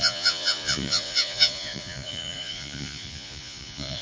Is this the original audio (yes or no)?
no